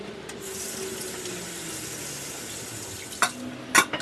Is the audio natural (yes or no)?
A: yes